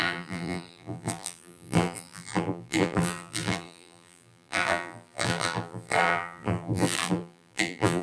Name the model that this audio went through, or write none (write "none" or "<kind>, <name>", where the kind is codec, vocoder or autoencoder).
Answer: vocoder, BigVGAN v2